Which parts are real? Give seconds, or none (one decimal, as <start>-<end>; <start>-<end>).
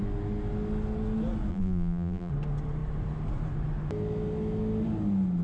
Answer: 0.0-1.5; 2.3-5.4